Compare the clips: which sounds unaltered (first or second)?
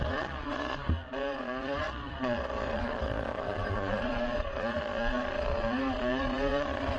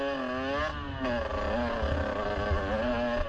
second